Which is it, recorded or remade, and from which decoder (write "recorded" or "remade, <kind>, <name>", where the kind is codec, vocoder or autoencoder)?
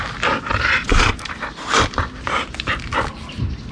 recorded